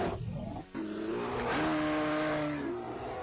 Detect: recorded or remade recorded